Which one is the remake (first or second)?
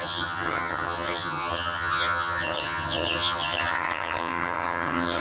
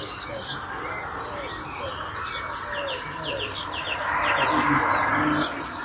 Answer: first